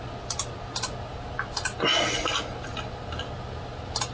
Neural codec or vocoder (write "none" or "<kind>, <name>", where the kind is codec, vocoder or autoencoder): none